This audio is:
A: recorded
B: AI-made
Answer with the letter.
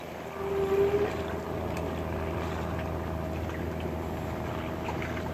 A